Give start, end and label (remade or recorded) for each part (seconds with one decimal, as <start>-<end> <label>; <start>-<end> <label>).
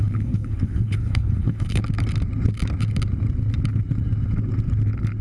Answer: 0.0-1.8 remade; 1.8-5.2 recorded